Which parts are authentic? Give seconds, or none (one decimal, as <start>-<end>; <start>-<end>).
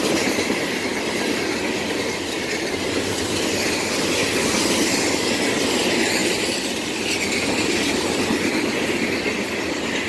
0.0-10.1